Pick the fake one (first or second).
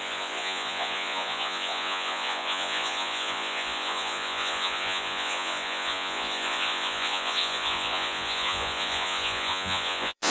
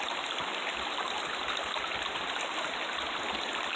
first